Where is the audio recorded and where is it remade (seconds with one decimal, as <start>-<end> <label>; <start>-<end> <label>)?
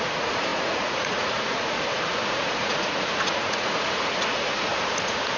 0.0-5.4 remade